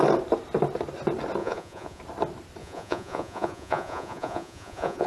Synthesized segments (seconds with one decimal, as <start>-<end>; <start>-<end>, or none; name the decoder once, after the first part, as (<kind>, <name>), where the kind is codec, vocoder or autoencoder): 1.4-2.0 (vocoder, Vocos); 2.6-5.1